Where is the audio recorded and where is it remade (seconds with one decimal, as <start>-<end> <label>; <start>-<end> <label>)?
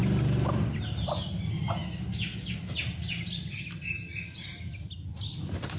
0.0-5.8 recorded